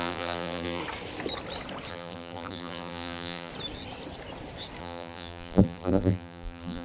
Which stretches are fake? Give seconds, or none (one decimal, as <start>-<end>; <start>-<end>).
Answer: 0.0-0.8; 1.9-3.5; 4.8-6.8

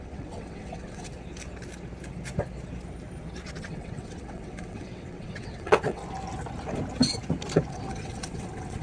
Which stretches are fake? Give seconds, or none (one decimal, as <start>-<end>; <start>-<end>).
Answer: 0.0-1.1; 3.6-6.0; 7.7-8.8

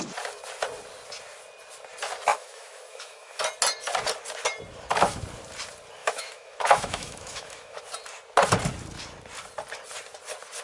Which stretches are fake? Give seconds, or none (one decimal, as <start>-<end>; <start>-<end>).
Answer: 2.3-3.4; 6.0-7.8

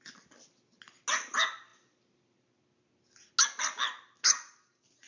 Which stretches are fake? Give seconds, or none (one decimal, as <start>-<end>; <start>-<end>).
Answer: none

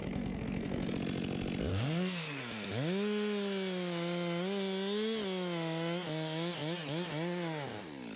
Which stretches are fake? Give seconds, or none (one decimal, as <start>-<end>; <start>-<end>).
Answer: 0.0-0.9; 1.7-2.4

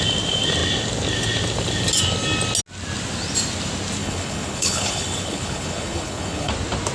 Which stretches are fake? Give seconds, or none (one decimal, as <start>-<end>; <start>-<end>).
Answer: 4.0-6.5

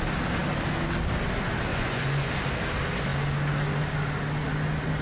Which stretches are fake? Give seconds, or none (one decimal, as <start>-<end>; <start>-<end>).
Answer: 1.7-2.3

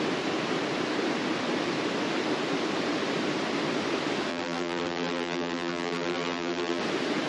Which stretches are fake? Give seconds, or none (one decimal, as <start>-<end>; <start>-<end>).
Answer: 4.3-6.8